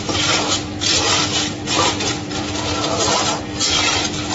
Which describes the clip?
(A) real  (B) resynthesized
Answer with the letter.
A